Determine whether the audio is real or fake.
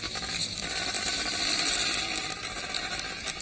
real